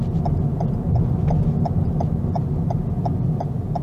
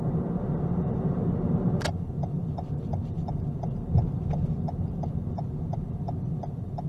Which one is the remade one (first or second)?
second